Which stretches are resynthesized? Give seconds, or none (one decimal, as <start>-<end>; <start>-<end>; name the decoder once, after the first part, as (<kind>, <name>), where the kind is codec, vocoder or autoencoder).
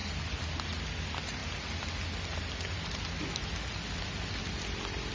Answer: none